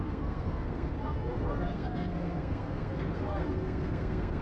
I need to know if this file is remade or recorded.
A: remade